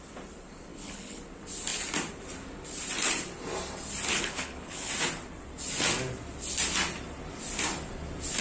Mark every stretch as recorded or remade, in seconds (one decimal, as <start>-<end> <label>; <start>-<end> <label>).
0.0-0.7 recorded; 0.7-1.2 remade; 1.2-4.1 recorded; 4.1-4.9 remade; 4.9-8.4 recorded

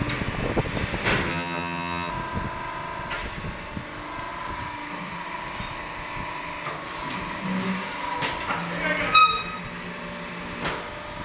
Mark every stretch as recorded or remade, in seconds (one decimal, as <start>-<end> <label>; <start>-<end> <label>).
0.0-1.3 recorded; 1.3-2.1 remade; 2.1-11.2 recorded